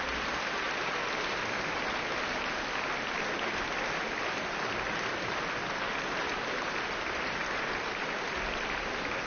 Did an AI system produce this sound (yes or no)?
no